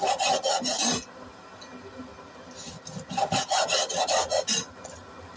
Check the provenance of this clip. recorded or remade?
recorded